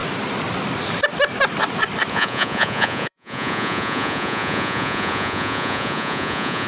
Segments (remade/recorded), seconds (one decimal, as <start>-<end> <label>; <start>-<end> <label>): 0.0-2.1 recorded; 2.1-6.7 remade